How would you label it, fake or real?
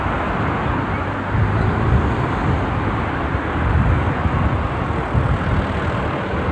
real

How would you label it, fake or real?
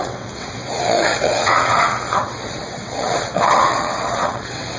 fake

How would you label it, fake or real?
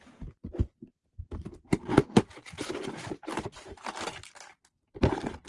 fake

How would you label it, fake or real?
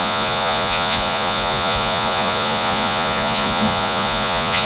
fake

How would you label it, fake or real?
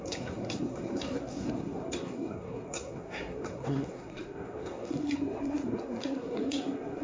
fake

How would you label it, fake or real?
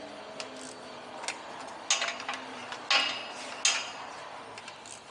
real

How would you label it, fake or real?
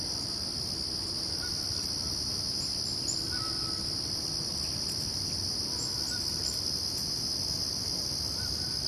real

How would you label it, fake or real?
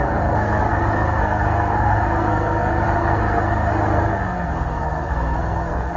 fake